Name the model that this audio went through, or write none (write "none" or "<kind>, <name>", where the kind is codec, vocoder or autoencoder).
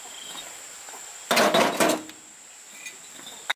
none